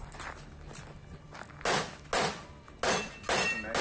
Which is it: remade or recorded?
recorded